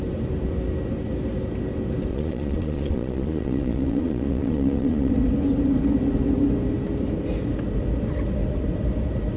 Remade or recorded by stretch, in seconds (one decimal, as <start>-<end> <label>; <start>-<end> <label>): 0.0-2.1 recorded; 2.1-5.1 remade; 5.1-9.4 recorded